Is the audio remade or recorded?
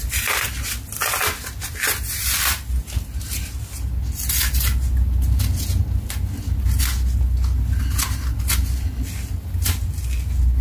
recorded